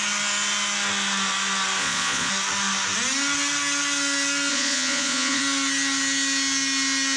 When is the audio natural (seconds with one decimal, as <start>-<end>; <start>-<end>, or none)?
0.0-1.8; 2.3-4.5; 5.4-7.2